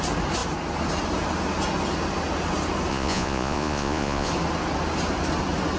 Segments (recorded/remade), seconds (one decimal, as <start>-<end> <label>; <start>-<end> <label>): 0.0-2.9 recorded; 2.9-4.3 remade; 4.3-5.8 recorded